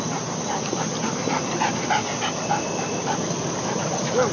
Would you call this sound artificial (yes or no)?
no